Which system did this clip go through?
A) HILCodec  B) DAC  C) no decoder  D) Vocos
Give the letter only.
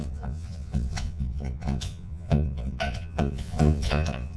D